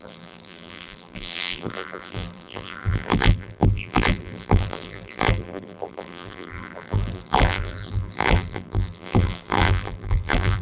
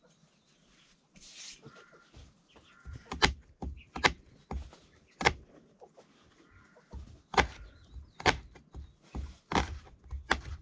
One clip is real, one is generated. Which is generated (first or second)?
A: first